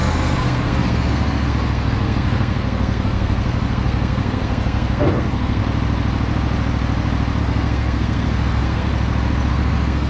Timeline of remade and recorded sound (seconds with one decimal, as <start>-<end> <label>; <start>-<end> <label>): 0.0-5.6 remade; 5.6-7.4 recorded; 7.4-8.9 remade; 8.9-9.5 recorded; 9.5-10.1 remade